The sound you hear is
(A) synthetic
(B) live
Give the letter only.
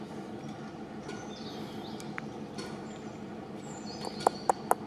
B